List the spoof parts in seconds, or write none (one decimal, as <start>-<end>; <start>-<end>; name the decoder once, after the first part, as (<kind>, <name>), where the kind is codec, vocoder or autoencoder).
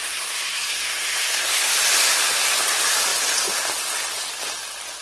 0.0-1.7 (codec, SNAC)